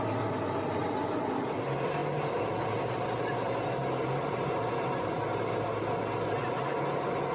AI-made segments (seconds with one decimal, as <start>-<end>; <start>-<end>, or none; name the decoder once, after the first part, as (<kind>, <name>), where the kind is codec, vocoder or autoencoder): none

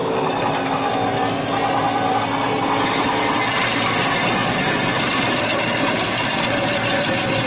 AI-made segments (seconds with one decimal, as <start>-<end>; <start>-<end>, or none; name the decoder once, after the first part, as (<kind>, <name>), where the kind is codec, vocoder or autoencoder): none

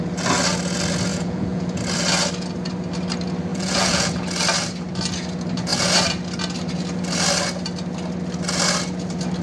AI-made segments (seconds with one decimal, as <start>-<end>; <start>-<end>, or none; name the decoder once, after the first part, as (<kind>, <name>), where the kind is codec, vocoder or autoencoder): 1.1-1.8 (vocoder, Vocos); 3.5-4.1

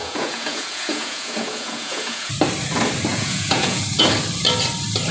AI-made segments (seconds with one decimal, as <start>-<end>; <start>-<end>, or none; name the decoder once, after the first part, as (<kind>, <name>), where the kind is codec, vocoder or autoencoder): 0.0-2.3 (vocoder, Vocos); 3.1-3.8